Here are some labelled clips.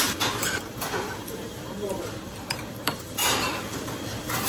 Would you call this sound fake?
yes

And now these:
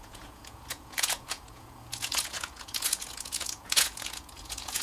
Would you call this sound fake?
yes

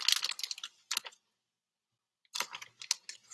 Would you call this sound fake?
no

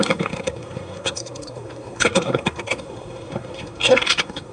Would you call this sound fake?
yes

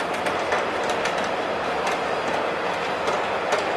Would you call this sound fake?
no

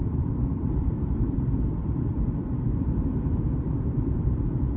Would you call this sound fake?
yes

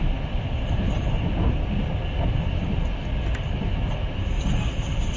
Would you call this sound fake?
no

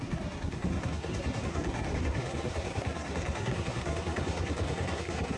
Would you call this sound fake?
yes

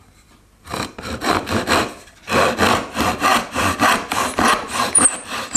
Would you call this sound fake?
yes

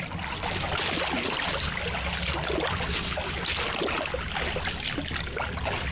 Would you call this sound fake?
no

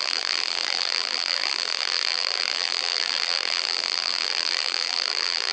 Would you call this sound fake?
yes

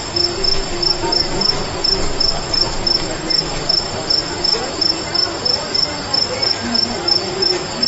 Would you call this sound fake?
no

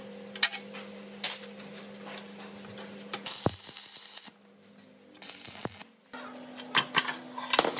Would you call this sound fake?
no